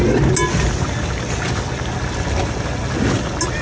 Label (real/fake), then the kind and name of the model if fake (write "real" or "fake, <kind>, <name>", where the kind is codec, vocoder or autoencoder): real